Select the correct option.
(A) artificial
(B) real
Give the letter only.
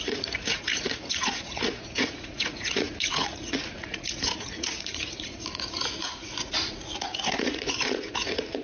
A